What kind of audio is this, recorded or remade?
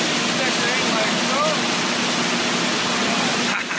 recorded